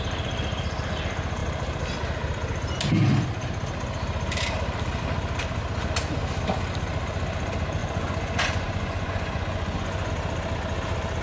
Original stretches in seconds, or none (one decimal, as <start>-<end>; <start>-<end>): 0.0-7.8; 10.1-11.2